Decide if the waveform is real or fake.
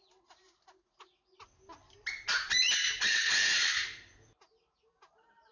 real